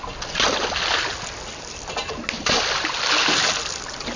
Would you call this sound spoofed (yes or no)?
no